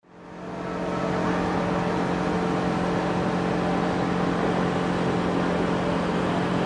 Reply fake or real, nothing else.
real